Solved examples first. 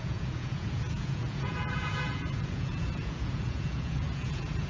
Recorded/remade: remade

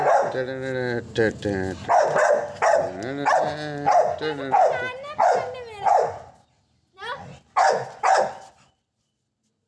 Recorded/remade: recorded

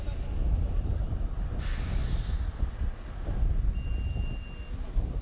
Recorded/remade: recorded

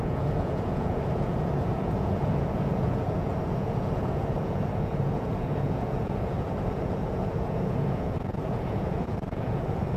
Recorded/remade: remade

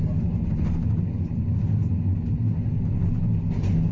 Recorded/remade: recorded